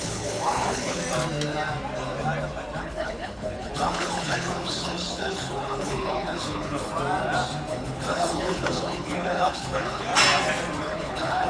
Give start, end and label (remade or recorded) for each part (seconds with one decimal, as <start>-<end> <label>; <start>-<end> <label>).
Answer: 0.0-1.0 remade; 1.0-2.8 recorded; 2.8-6.9 remade; 6.9-7.7 recorded; 7.7-10.1 remade; 10.1-10.8 recorded; 10.8-11.5 remade

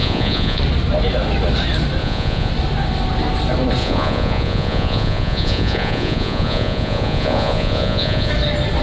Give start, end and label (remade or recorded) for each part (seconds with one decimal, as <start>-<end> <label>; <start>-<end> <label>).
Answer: 0.0-0.6 remade; 0.6-2.0 recorded; 2.0-2.5 remade; 2.5-3.8 recorded; 3.8-8.3 remade; 8.3-8.8 recorded

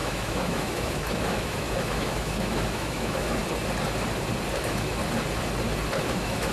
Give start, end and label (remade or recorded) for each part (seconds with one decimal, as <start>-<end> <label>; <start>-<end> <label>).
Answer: 0.0-3.4 remade; 3.4-4.6 recorded; 4.6-5.0 remade; 5.0-6.0 recorded; 6.0-6.5 remade

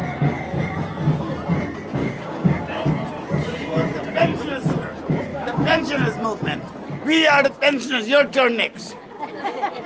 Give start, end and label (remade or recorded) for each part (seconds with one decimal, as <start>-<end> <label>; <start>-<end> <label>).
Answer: 0.0-2.0 recorded; 2.0-2.6 remade; 2.6-5.3 recorded; 5.3-5.8 remade; 5.8-9.9 recorded

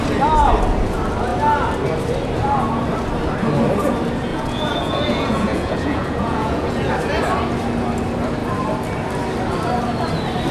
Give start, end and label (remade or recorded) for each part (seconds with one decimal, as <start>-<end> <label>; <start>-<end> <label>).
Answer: 0.0-4.3 recorded; 4.3-6.9 remade; 6.9-10.5 recorded

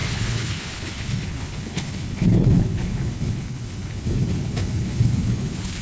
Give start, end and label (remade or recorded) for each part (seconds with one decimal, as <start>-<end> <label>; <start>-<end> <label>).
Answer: 0.0-5.8 remade